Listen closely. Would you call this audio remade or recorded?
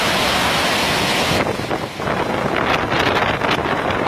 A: recorded